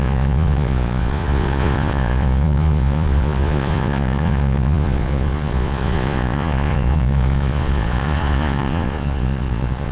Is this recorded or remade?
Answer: remade